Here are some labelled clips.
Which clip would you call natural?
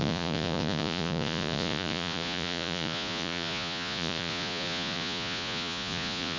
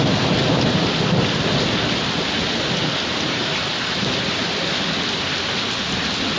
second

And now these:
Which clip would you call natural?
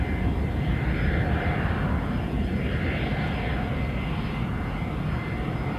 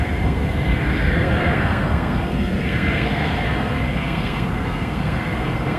first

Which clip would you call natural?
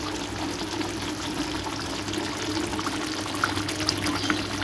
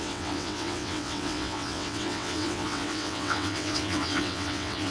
first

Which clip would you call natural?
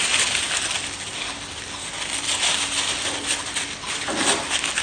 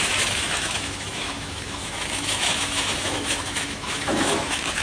first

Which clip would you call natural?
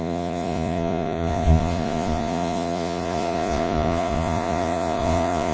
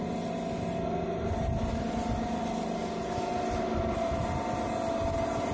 second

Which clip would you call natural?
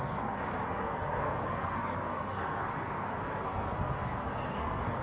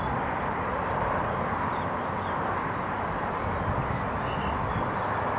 second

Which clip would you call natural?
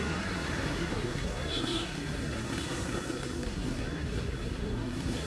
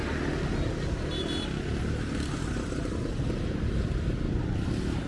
second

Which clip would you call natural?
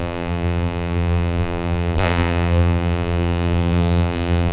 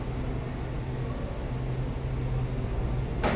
second